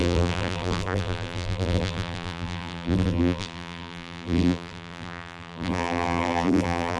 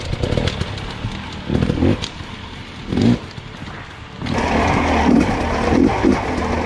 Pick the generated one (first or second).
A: first